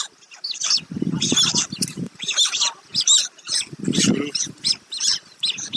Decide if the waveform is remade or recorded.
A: recorded